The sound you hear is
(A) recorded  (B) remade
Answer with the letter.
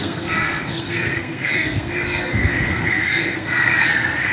B